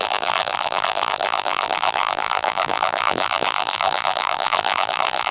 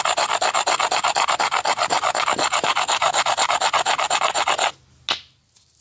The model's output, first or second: first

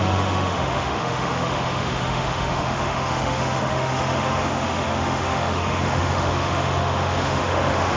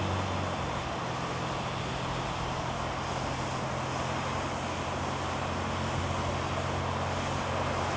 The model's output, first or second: first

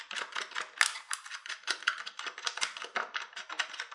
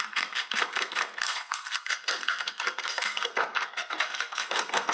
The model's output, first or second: second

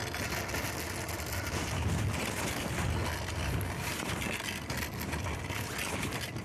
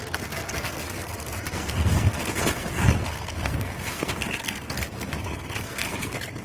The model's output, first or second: second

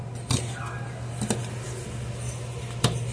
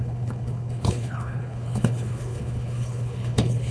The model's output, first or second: second